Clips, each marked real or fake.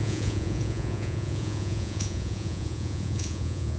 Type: fake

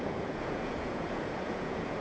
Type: fake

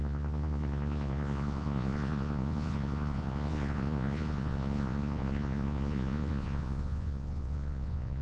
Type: fake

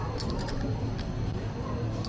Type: real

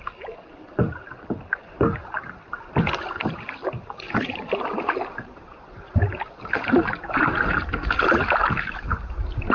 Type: real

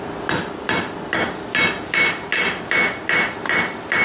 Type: real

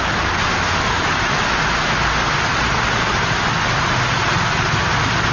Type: real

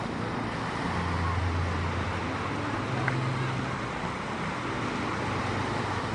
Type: real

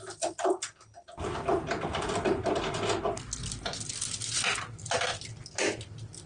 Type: real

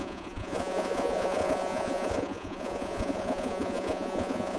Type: fake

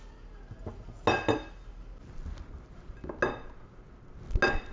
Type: real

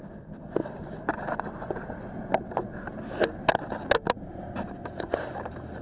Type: real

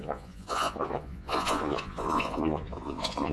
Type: fake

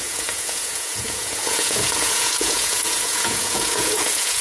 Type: fake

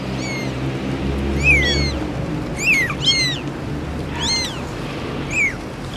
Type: real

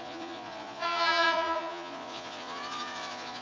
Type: fake